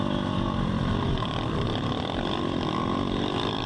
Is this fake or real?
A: fake